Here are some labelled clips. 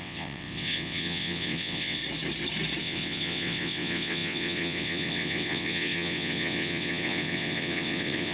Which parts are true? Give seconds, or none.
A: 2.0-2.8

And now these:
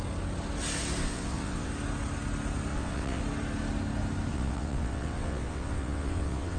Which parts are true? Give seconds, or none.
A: 0.0-1.0; 1.7-2.7; 3.2-4.3